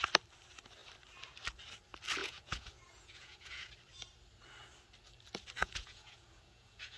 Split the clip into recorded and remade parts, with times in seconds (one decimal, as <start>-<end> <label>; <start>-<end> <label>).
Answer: 0.0-2.2 recorded; 2.2-3.7 remade; 3.7-5.6 recorded; 5.6-7.0 remade